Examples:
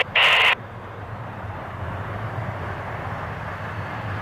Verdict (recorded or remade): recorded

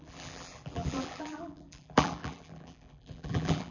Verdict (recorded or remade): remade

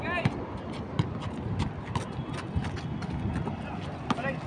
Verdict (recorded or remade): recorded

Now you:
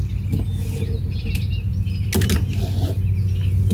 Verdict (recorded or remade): recorded